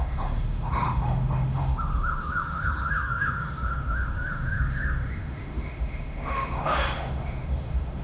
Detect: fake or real fake